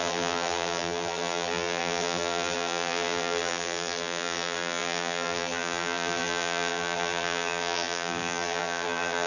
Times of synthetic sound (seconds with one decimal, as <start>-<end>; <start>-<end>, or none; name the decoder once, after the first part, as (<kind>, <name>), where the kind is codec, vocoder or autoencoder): 0.0-9.3 (vocoder, BigVGAN v2)